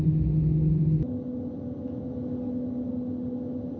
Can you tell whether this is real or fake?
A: real